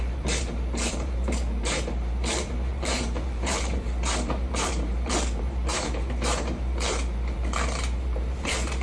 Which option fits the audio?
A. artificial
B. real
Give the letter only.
A